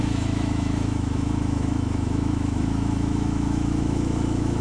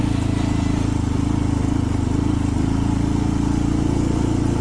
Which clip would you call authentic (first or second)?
second